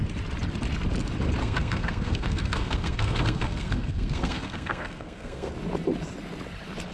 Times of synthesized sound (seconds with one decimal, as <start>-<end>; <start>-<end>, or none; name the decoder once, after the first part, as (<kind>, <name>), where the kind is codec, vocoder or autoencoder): 1.4-5.5 (codec, SNAC)